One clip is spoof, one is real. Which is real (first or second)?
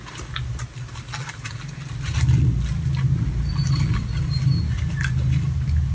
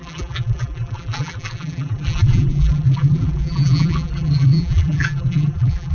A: first